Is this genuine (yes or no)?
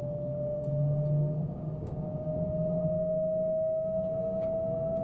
no